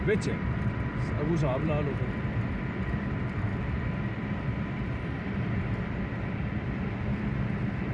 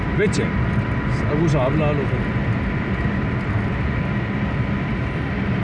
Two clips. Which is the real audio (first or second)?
second